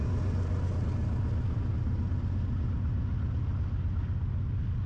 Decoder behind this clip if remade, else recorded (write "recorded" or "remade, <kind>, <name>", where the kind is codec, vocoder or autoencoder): recorded